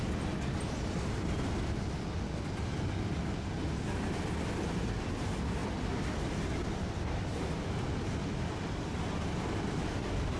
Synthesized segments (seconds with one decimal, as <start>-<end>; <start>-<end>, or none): none